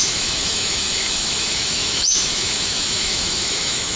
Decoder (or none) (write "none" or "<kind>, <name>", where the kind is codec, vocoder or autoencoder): autoencoder, DAC-VAE